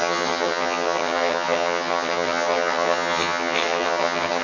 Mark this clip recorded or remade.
remade